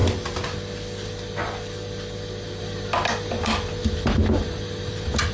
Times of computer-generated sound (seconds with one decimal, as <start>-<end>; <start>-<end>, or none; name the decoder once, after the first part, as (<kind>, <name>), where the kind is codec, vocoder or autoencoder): none